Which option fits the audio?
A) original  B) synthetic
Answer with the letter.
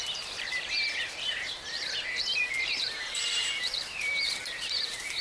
B